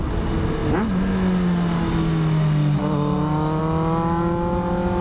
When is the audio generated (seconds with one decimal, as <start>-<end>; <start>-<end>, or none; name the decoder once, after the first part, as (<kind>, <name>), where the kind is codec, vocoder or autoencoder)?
none